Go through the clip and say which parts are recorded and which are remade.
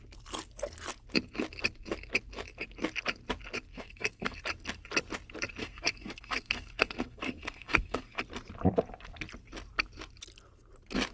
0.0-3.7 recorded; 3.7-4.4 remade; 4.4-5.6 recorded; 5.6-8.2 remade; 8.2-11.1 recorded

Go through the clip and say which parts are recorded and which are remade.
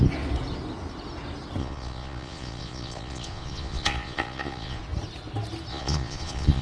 0.0-1.6 recorded; 1.6-4.8 remade; 4.8-5.7 recorded; 5.7-6.6 remade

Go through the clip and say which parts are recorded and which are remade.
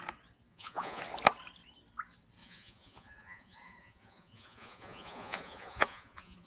0.0-0.5 recorded; 0.5-1.0 remade; 1.0-2.4 recorded; 2.4-6.5 remade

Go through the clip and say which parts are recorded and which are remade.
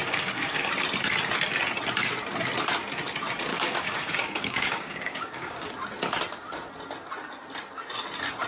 0.0-0.7 remade; 0.7-3.5 recorded; 3.5-5.7 remade; 5.7-8.5 recorded